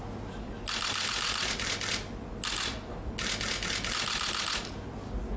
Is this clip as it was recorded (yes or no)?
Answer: yes